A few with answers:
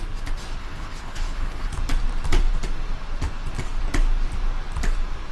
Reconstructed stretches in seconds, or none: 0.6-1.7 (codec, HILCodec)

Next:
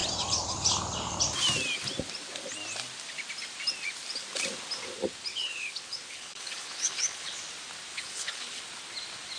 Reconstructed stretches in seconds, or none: 5.3-7.4 (codec, HILCodec); 7.9-8.6

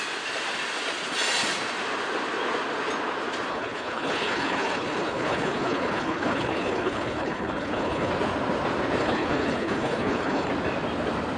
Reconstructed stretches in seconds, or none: 3.5-8.1 (codec, HILCodec); 9.0-10.5

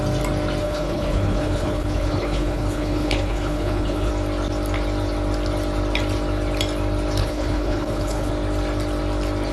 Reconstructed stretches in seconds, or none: 0.6-4.1 (codec, HILCodec); 7.2-8.3

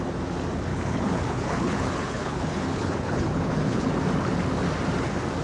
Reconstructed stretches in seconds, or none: 0.7-3.9 (codec, HILCodec)

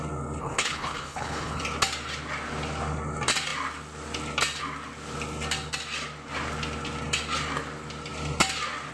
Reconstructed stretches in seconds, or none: 0.4-1.6 (codec, HILCodec)

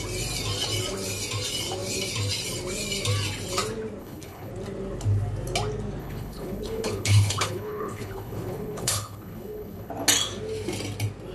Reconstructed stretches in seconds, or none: 4.0-4.5 (codec, HILCodec); 6.0-9.9